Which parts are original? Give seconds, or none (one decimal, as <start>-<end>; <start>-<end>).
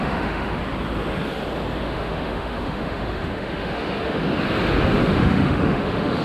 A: 0.6-1.8; 4.2-5.0